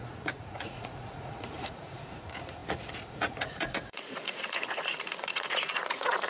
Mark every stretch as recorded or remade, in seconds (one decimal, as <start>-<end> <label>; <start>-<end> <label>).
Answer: 0.0-6.3 remade

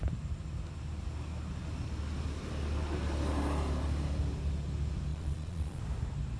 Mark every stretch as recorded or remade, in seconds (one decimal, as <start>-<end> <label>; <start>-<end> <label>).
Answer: 0.0-5.1 recorded; 5.1-5.8 remade; 5.8-6.4 recorded

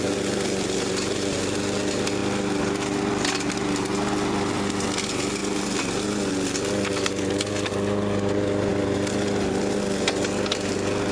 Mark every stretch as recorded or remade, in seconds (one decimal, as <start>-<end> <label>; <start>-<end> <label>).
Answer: 0.0-11.1 recorded

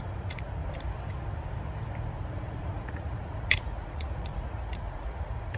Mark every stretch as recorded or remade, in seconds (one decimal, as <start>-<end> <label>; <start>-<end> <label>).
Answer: 0.0-0.6 remade; 0.6-2.3 recorded; 2.3-5.6 remade

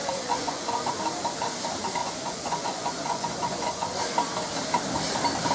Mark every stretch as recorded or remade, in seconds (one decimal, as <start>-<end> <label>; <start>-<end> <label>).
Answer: 0.0-0.9 remade; 0.9-2.0 recorded; 2.0-4.0 remade; 4.0-5.5 recorded

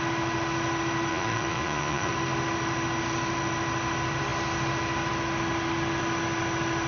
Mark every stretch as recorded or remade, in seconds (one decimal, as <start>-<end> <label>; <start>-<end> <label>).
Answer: 0.0-1.1 recorded; 1.1-2.1 remade; 2.1-6.9 recorded

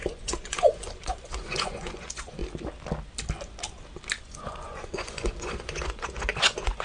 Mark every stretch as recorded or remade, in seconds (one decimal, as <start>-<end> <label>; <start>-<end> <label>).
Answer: 0.0-2.4 remade; 2.4-4.2 recorded; 4.2-6.8 remade